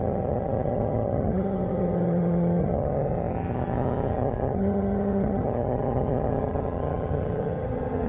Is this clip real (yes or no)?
no